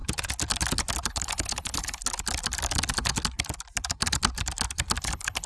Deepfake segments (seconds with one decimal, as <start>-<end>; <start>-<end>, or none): 1.1-2.0; 5.0-5.5